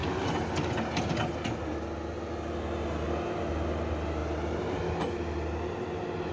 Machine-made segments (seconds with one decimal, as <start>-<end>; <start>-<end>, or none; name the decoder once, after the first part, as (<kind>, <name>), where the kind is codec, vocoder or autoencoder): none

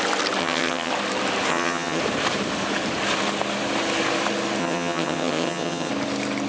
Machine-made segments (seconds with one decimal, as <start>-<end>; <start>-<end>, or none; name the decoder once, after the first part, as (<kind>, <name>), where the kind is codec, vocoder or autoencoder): 0.4-0.9 (vocoder, HiFi-GAN); 1.5-2.0; 4.6-5.9

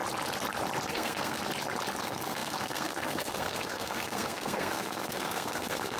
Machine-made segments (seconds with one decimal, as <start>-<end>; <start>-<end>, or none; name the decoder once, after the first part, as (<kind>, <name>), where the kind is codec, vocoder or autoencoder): 0.9-1.4 (codec, SNAC); 2.0-6.0

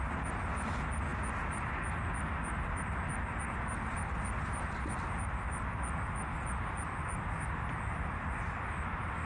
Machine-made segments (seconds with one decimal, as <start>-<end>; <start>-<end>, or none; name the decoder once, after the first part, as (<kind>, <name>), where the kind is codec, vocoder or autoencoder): none

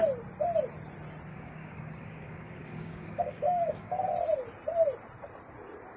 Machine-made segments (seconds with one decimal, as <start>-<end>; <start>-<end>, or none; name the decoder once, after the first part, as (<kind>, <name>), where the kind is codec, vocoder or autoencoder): 1.3-4.1 (codec, DAC)

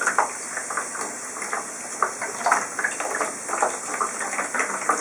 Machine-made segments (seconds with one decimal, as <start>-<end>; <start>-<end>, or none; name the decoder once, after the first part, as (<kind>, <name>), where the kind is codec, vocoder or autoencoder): none